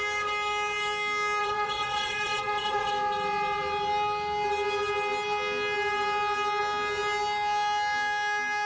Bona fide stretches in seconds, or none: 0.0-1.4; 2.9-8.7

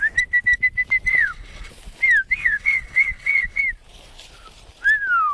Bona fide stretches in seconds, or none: 0.0-1.1; 1.7-2.4; 3.6-5.3